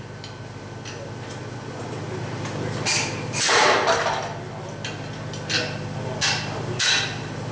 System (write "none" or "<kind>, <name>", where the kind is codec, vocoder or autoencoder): none